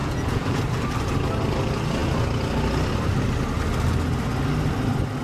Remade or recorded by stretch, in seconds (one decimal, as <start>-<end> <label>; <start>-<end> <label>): 0.0-0.6 remade; 0.6-5.2 recorded